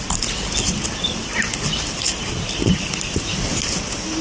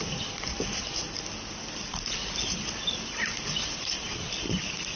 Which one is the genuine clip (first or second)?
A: first